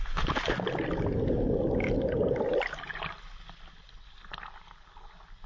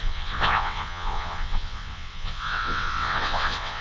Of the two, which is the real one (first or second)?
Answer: first